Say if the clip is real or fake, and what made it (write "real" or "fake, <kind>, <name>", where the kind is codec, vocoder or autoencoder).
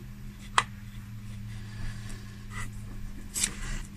real